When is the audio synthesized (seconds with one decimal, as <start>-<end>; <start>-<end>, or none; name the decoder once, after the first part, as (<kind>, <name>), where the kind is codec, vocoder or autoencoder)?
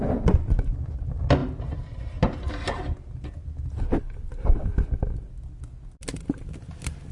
none